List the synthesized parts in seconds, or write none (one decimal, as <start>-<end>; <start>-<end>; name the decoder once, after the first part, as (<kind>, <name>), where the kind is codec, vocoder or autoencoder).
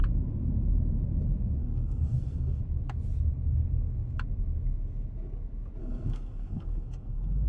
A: 1.6-2.6 (codec, SNAC); 5.8-7.5